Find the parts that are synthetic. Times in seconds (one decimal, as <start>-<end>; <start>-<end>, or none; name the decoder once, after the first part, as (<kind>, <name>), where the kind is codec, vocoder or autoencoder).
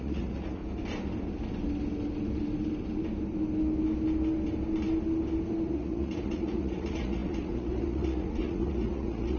0.0-0.6 (vocoder, Vocos); 5.7-9.4